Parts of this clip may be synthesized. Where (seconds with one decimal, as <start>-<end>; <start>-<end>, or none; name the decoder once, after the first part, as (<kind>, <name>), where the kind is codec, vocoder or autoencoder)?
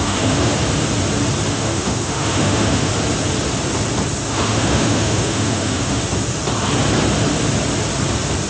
0.0-0.5 (autoencoder, DAC-VAE); 1.5-2.9; 4.3-6.0